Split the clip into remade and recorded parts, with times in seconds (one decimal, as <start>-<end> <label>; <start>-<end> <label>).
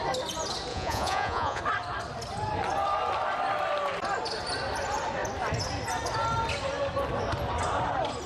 0.0-0.7 recorded; 0.7-1.6 remade; 1.6-8.3 recorded